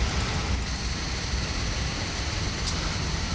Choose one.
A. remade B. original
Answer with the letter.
B